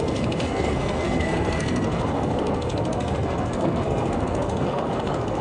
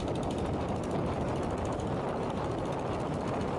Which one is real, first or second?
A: second